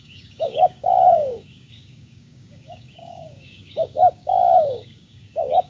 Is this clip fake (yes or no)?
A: yes